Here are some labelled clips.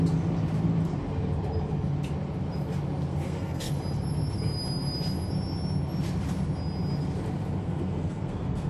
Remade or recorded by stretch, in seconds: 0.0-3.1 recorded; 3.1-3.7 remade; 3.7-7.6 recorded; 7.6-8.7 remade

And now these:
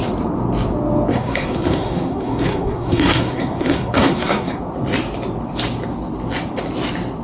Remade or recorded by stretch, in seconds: 0.0-1.1 recorded; 1.1-4.6 remade; 4.6-7.2 recorded